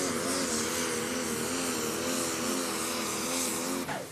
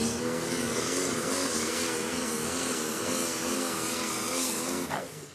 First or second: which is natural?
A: first